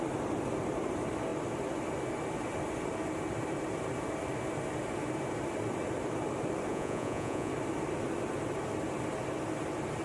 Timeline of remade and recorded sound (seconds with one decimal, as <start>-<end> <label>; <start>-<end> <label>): 0.0-6.7 recorded; 6.7-7.5 remade; 7.5-10.0 recorded